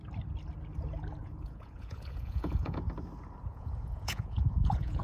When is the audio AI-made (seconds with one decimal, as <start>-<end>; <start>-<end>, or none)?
1.2-2.8; 3.5-5.0